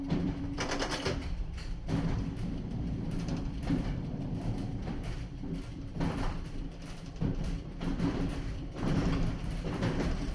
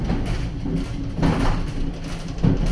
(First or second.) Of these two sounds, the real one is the second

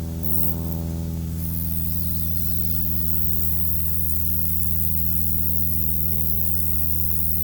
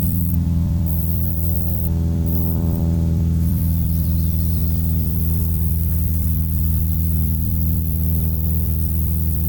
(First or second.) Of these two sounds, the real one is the first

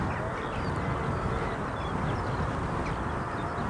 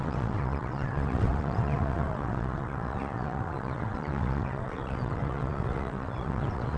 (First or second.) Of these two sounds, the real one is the first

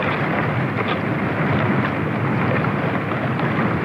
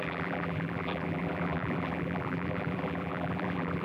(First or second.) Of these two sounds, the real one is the first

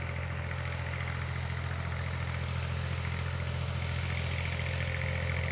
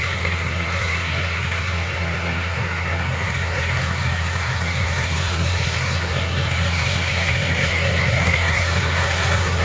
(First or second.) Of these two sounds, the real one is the first